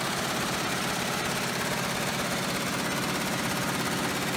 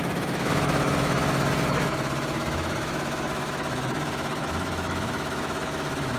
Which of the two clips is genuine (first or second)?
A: first